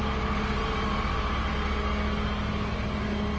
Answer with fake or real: real